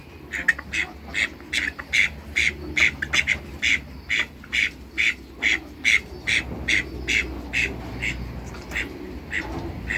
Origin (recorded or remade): recorded